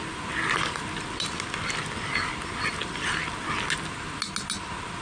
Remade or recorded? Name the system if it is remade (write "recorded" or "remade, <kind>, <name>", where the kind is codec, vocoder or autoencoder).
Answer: recorded